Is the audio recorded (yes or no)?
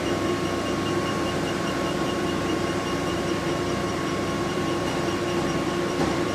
no